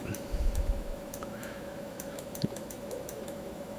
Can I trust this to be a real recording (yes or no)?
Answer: no